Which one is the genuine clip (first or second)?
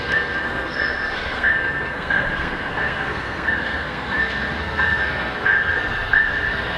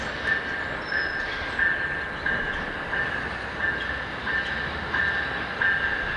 second